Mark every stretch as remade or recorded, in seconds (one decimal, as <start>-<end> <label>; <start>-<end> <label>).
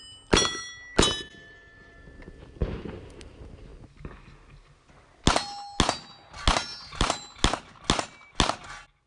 0.0-2.6 recorded; 2.6-3.3 remade; 3.3-6.7 recorded; 6.7-7.3 remade; 7.3-9.1 recorded